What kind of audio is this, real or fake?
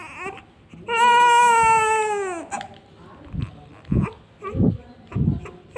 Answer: real